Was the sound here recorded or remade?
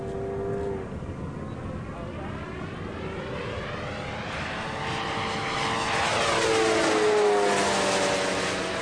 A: recorded